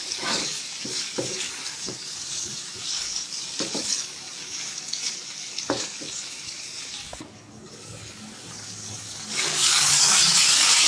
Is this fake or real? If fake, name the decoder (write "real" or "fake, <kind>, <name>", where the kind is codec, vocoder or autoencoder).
fake, codec, DAC